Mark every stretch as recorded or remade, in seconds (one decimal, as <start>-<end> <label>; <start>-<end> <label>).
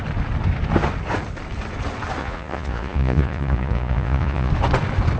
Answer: 0.0-2.2 recorded; 2.2-4.5 remade; 4.5-5.2 recorded